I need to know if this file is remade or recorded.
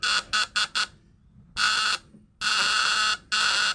recorded